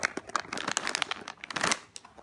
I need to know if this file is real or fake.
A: real